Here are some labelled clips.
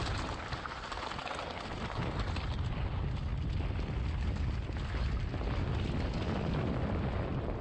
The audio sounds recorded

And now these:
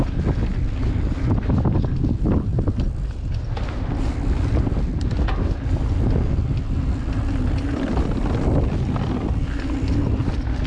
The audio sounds recorded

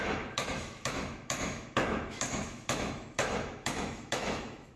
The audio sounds remade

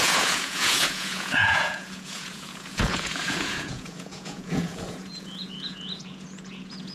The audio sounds remade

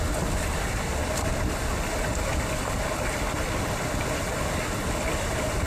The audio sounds recorded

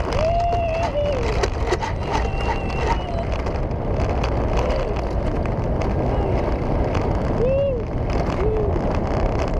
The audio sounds recorded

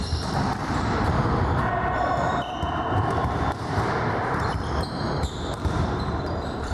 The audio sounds remade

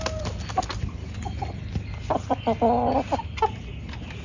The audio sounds recorded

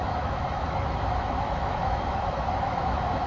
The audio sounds remade